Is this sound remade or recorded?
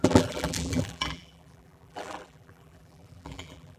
remade